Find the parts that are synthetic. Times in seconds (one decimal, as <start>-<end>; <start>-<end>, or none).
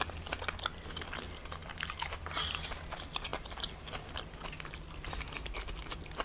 none